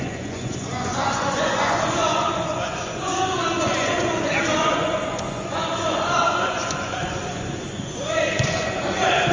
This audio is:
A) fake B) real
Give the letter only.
A